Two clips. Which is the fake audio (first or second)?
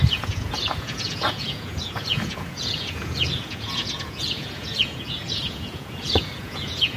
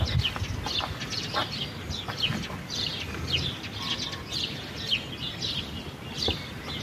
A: first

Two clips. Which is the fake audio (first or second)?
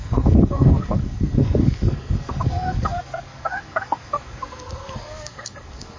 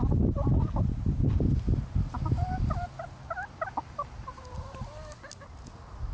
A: first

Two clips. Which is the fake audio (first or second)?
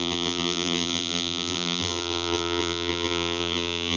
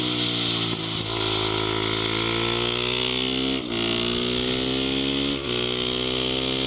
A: first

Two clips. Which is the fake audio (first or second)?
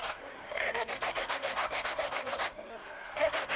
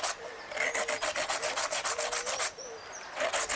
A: first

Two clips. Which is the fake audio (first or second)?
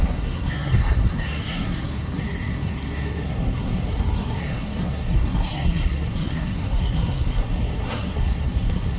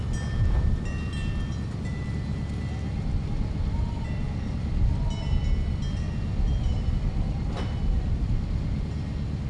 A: first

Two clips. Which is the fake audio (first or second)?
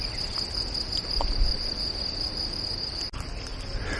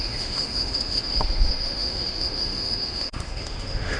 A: second